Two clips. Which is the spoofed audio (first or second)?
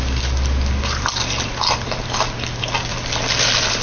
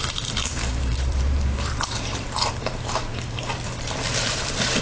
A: second